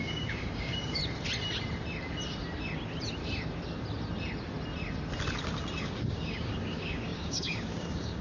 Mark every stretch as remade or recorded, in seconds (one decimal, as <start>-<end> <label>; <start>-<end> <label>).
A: 0.0-1.0 remade; 1.0-5.8 recorded; 5.8-8.2 remade